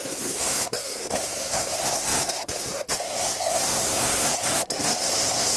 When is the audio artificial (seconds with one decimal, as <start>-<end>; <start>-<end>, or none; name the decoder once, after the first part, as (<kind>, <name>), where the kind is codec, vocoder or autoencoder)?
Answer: 0.0-5.6 (codec, SNAC)